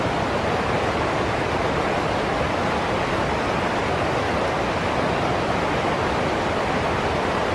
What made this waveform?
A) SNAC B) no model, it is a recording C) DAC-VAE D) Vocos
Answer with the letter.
B